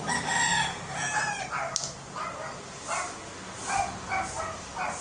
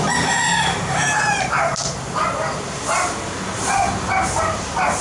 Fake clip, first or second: second